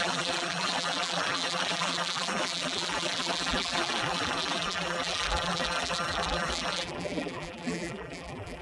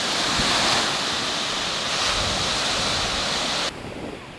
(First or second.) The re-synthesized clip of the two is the first